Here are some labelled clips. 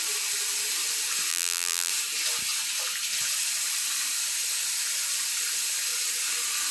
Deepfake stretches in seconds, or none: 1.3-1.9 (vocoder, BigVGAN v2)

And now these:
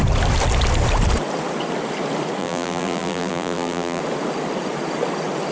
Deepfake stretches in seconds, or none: 2.4-4.0 (vocoder, BigVGAN v2)

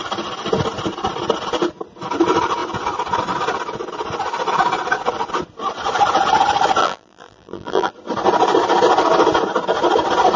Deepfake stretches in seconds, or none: 6.8-7.9 (vocoder, BigVGAN v2)

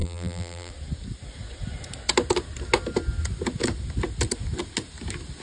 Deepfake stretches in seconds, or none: 0.0-0.7 (vocoder, BigVGAN v2)

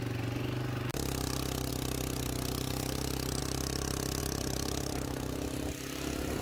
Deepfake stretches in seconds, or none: 0.9-1.7 (vocoder, BigVGAN v2); 3.4-4.2

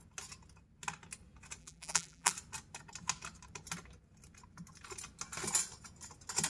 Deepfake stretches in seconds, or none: 1.6-2.3 (vocoder, BigVGAN v2)

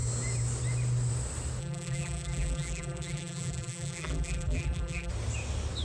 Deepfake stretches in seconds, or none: 1.6-5.1 (vocoder, BigVGAN v2)